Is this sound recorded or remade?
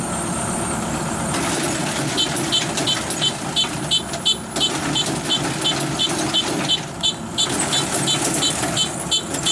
recorded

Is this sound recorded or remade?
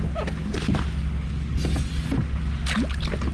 recorded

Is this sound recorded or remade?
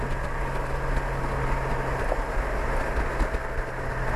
recorded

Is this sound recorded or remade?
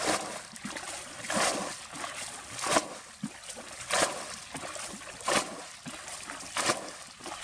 recorded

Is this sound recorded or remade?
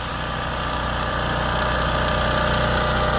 remade